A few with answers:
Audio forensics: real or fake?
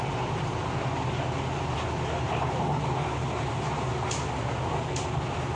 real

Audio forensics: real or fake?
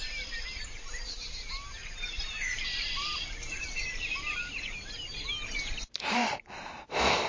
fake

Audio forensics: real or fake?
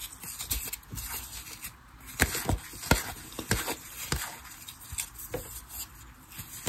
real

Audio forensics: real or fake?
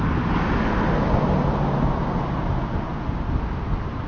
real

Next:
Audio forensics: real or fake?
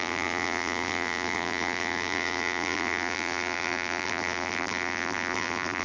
fake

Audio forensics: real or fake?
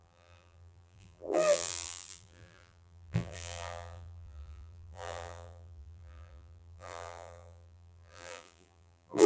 fake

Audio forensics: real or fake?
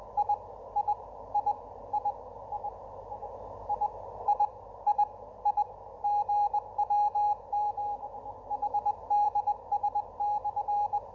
fake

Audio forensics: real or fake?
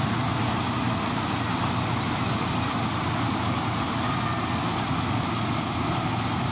real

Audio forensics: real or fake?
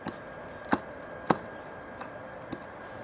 real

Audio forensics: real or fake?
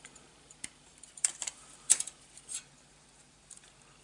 fake